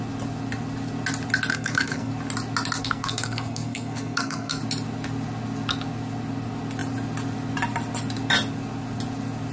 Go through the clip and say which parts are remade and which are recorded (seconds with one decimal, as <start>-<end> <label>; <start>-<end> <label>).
0.0-1.5 recorded; 1.5-2.1 remade; 2.1-2.8 recorded; 2.8-4.6 remade; 4.6-9.5 recorded